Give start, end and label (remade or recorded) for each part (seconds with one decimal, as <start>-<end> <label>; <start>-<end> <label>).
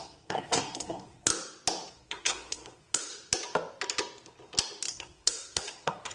0.0-1.3 remade; 1.3-1.9 recorded; 1.9-3.1 remade; 3.1-4.9 recorded; 4.9-6.1 remade